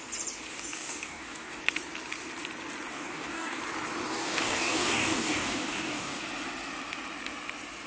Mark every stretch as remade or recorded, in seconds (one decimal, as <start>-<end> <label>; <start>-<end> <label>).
0.0-0.5 recorded; 0.5-1.6 remade; 1.6-2.9 recorded; 2.9-3.6 remade; 3.6-4.1 recorded; 4.1-6.2 remade; 6.2-7.9 recorded